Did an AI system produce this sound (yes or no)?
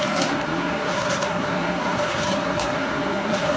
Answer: yes